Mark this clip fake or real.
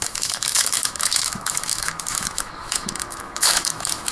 fake